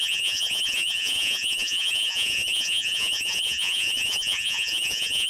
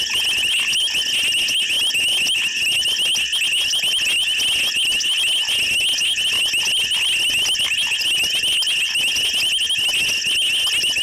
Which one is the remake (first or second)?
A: first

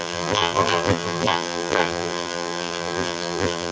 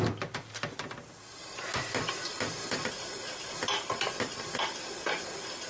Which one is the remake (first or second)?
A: first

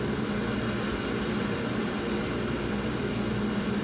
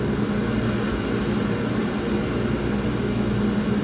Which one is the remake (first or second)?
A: first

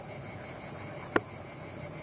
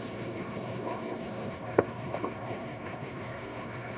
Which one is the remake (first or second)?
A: second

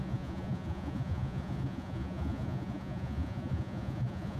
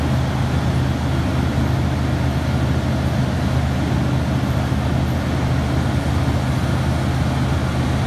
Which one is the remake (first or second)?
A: first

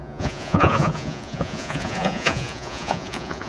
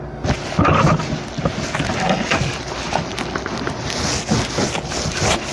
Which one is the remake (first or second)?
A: first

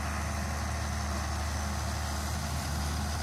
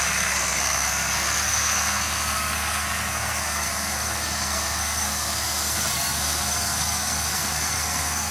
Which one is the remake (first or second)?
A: second